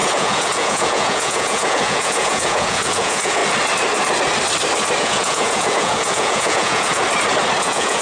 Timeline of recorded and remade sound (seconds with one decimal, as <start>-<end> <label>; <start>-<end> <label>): 0.0-3.4 remade; 3.4-5.0 recorded; 5.0-7.0 remade; 7.0-7.6 recorded; 7.6-8.0 remade